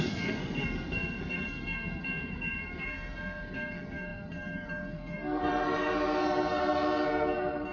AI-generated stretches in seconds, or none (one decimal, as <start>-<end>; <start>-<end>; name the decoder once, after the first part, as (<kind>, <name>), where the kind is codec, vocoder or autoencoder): 0.0-7.7 (codec, SNAC)